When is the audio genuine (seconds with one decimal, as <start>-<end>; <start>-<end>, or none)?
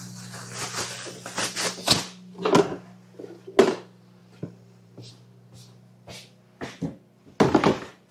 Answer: 0.0-4.2; 5.1-8.1